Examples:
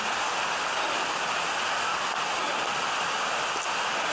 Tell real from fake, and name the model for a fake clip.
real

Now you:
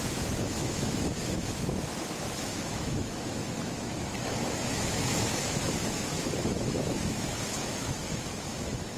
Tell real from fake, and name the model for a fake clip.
fake, autoencoder, DAC-VAE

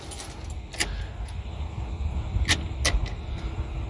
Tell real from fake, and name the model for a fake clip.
real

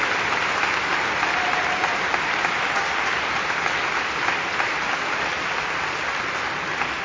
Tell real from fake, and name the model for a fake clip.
real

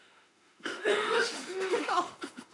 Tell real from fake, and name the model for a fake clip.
fake, autoencoder, DAC-VAE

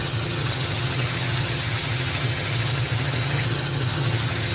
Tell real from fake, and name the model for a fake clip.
fake, vocoder, HiFi-GAN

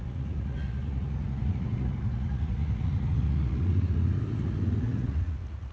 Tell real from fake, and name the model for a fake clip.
fake, vocoder, Vocos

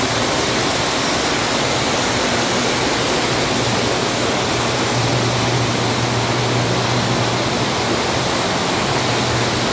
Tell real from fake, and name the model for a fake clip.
real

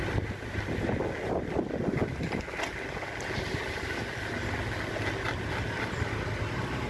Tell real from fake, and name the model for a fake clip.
real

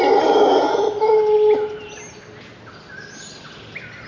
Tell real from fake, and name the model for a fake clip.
real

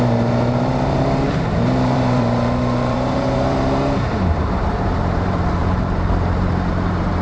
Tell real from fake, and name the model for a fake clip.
fake, vocoder, BigVGAN v2